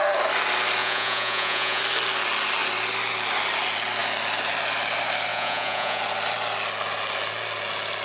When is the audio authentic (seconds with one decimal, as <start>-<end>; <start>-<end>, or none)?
0.0-0.8; 1.8-5.3; 6.0-8.0